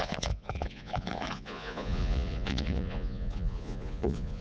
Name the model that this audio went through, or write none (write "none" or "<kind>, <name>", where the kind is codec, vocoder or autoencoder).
vocoder, Vocos